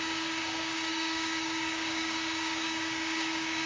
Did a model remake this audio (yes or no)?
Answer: yes